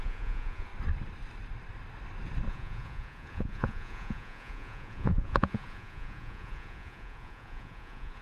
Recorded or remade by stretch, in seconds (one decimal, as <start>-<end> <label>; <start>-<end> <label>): 0.0-0.7 remade; 0.7-2.5 recorded; 2.5-8.2 remade